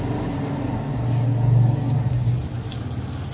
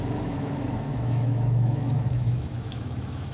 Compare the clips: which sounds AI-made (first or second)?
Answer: second